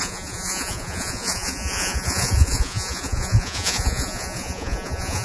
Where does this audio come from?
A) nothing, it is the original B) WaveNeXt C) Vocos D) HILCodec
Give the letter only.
C